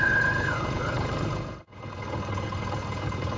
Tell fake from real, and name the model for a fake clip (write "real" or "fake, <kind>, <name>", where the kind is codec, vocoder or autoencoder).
fake, codec, HILCodec